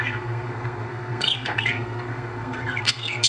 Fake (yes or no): yes